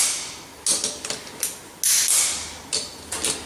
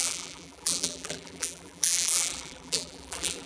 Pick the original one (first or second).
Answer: first